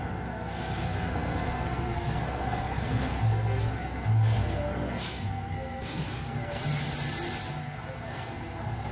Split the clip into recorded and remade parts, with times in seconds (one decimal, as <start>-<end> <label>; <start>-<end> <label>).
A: 0.0-6.6 remade; 6.6-7.6 recorded; 7.6-8.9 remade